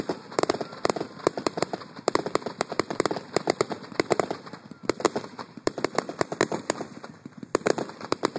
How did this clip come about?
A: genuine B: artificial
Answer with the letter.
B